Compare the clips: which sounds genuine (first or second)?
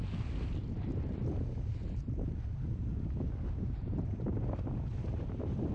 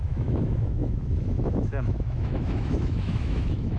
first